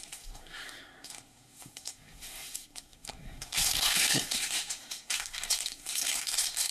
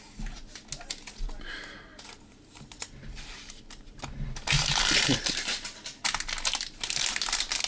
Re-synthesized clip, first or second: first